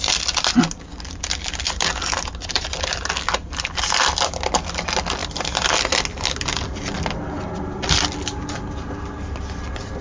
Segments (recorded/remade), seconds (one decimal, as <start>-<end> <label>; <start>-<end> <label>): 0.0-10.0 recorded